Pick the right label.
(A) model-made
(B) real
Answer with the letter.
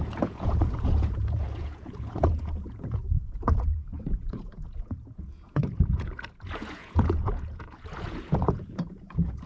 A